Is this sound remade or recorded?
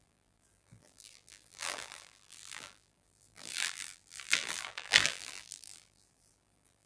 remade